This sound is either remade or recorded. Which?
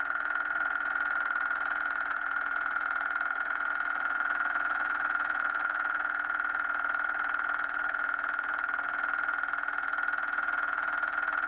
remade